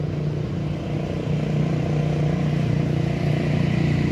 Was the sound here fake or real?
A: real